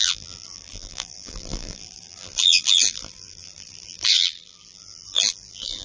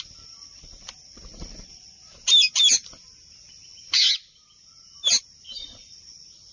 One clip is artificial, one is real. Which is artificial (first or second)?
first